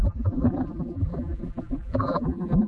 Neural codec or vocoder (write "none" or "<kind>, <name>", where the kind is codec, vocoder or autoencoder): vocoder, BigVGAN v2